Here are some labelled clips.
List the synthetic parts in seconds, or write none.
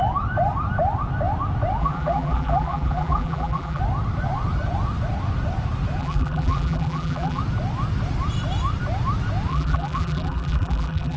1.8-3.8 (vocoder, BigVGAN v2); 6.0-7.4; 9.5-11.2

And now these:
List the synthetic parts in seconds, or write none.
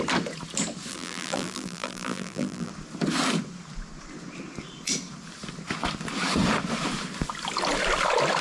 0.9-2.7 (vocoder, BigVGAN v2)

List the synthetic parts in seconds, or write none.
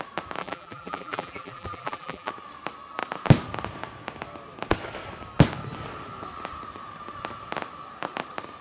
0.4-2.3 (vocoder, BigVGAN v2)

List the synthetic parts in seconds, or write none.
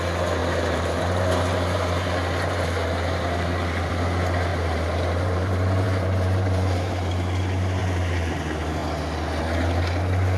0.4-3.9 (vocoder, BigVGAN v2); 4.5-7.1; 7.8-8.4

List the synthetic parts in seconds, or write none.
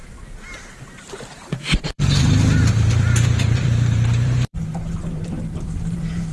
0.0-6.3 (vocoder, BigVGAN v2)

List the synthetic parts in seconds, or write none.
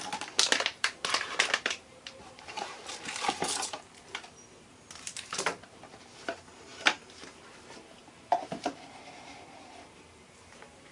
0.0-10.9 (vocoder, BigVGAN v2)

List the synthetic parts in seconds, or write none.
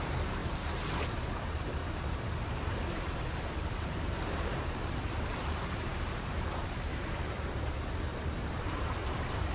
0.0-0.4 (vocoder, BigVGAN v2); 1.1-1.8; 3.8-9.5